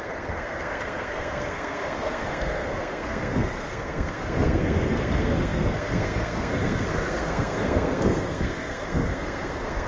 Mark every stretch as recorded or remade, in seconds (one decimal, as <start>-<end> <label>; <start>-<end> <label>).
0.0-9.9 remade